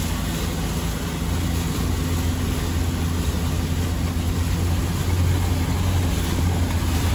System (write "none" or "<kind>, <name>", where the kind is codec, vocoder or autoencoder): none